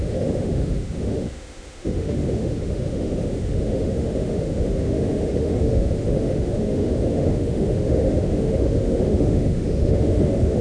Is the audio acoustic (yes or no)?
no